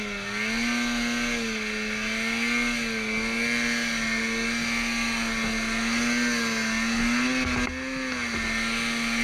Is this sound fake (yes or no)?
no